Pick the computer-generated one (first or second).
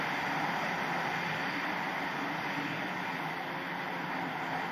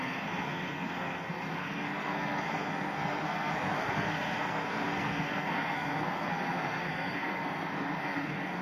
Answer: second